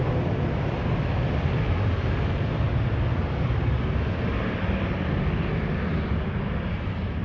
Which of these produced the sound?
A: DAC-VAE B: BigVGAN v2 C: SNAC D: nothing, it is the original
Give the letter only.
D